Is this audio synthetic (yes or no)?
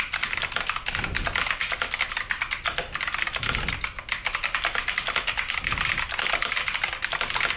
no